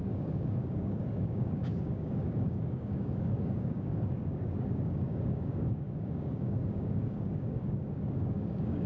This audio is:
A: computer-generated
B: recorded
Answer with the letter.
A